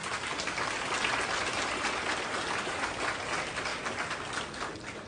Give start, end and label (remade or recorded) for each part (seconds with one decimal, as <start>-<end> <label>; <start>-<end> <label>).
0.0-5.1 recorded